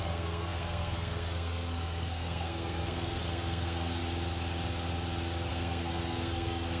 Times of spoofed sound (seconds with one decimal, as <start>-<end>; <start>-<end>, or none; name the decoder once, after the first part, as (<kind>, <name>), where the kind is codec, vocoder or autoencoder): 0.0-4.0 (codec, SNAC); 5.5-6.8

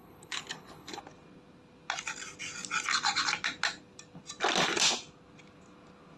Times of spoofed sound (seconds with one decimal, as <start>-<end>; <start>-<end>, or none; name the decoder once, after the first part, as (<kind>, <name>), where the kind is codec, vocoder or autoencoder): 0.0-1.0 (codec, HILCodec)

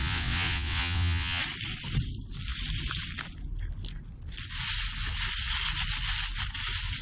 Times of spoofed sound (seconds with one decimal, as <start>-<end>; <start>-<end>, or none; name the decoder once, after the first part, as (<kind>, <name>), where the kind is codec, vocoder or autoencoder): 0.0-1.4 (vocoder, WaveNeXt)

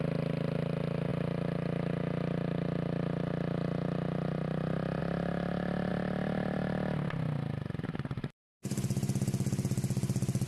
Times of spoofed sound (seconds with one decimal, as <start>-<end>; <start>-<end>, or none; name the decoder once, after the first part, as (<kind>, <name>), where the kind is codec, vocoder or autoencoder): 5.9-8.5 (vocoder, BigVGAN v2)

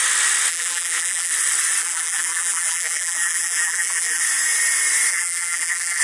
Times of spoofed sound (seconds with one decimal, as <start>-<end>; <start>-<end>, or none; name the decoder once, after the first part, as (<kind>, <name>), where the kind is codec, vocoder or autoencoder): 0.5-1.3 (vocoder, BigVGAN v2); 1.8-4.2; 5.1-6.0

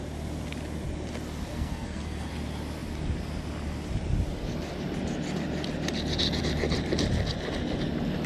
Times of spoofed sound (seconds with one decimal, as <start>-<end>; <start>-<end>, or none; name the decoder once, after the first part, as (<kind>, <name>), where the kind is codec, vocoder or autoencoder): 1.5-2.3 (codec, SNAC)

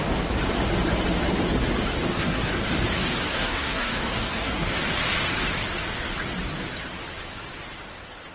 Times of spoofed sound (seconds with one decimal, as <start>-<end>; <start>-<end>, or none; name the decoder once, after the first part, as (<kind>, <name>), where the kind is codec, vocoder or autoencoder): 2.1-2.7 (codec, SNAC); 3.2-4.7